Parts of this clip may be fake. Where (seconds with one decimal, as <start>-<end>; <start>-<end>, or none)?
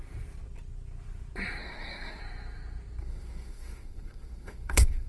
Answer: 1.6-2.2; 3.0-5.1